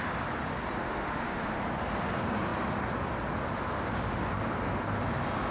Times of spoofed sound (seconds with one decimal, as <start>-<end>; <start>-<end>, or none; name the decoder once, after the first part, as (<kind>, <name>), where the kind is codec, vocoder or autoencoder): 0.8-1.6 (autoencoder, DAC-VAE)